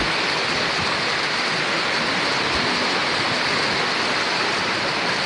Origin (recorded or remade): recorded